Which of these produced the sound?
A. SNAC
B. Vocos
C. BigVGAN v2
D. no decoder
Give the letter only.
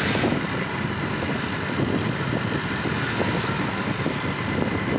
D